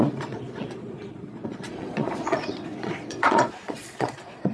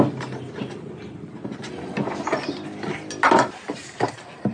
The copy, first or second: first